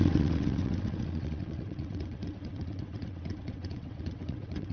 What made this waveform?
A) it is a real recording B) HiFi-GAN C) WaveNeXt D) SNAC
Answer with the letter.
C